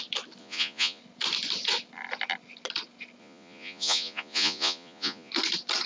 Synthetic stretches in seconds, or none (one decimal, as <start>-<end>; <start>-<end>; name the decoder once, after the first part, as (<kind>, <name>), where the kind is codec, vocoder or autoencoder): 0.4-1.0 (vocoder, Vocos); 3.2-5.3